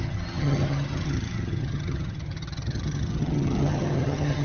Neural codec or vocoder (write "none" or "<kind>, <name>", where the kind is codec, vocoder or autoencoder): vocoder, HiFi-GAN